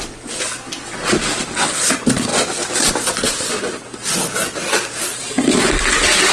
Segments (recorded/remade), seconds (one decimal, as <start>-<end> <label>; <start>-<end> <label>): 0.0-6.3 recorded